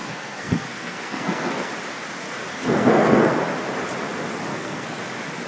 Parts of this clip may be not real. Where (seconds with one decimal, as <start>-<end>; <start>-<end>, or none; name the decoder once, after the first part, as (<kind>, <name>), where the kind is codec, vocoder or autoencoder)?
0.0-1.7 (codec, SNAC); 2.5-3.4; 4.5-5.0